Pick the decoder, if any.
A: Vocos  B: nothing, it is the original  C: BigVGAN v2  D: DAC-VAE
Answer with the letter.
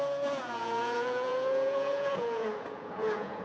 A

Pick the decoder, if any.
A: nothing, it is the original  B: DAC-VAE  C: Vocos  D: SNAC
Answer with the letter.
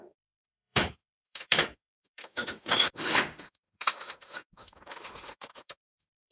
B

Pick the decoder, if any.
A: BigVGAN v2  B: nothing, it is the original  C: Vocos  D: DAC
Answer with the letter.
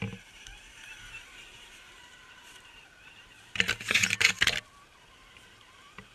A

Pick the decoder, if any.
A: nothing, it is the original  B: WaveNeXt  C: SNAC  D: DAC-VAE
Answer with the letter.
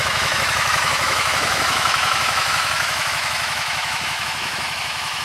D